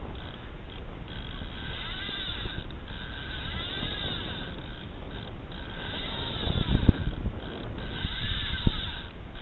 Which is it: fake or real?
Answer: real